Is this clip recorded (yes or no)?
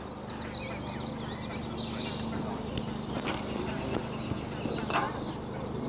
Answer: yes